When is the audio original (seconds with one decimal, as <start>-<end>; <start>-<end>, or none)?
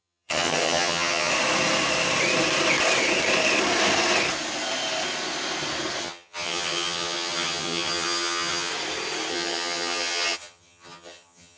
1.3-6.0; 8.7-9.3